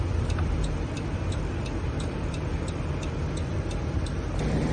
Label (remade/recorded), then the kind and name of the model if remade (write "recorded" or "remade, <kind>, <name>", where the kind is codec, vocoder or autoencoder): recorded